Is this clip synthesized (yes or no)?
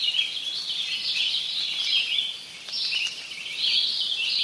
no